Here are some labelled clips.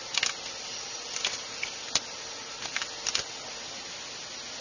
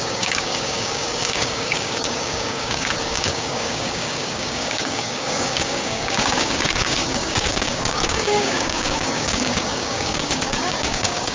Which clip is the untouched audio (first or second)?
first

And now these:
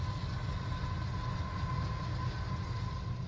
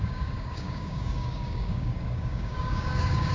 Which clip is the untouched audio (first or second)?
first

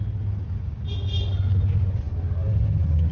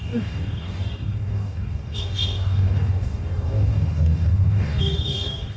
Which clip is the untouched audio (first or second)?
first